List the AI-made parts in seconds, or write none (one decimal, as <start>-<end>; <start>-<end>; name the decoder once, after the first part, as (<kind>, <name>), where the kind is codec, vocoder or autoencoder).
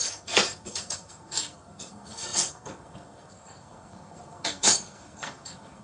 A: 0.0-5.8 (codec, SNAC)